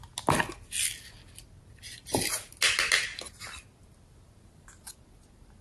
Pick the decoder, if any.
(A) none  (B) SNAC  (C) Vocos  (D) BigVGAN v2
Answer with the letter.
A